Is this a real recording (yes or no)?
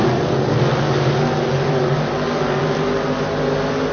yes